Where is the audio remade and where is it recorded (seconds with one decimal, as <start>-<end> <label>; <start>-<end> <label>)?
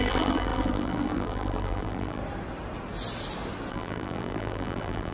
0.0-2.2 remade; 2.2-3.7 recorded; 3.7-5.1 remade